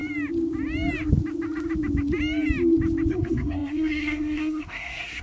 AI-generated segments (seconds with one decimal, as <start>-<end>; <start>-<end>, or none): 3.1-5.2